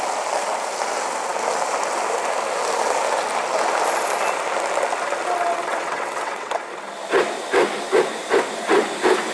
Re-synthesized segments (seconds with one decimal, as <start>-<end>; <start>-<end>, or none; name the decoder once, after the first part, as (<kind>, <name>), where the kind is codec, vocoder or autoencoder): 5.5-6.6 (vocoder, WaveNeXt)